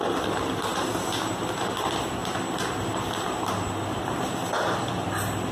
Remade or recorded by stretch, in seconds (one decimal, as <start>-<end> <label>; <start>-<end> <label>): 0.0-5.5 recorded